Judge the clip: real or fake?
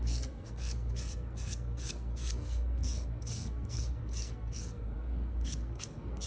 fake